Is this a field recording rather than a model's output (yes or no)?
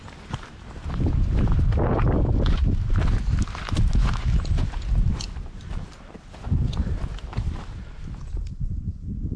no